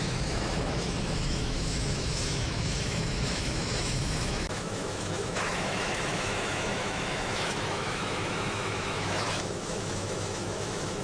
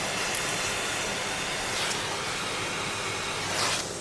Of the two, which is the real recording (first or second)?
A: second